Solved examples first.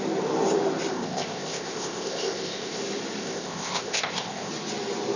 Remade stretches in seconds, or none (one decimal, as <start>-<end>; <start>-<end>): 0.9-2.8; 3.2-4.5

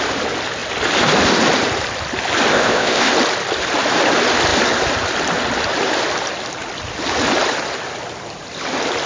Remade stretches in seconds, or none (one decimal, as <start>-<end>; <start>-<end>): 2.5-3.1

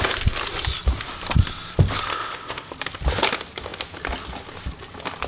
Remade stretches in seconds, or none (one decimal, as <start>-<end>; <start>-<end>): 2.1-2.7

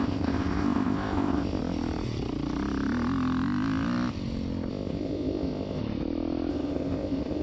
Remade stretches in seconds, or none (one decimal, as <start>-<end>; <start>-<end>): 0.0-1.6; 4.7-5.8; 6.5-7.4

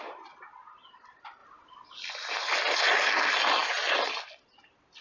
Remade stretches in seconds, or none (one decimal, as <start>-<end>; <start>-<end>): none